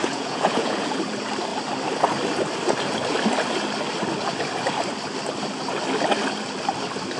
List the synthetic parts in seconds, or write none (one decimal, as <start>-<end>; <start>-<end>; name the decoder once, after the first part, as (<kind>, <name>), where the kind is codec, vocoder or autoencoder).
0.0-1.0 (vocoder, Vocos)